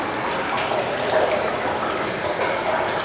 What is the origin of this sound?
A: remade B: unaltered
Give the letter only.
B